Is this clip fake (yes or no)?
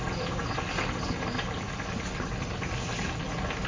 no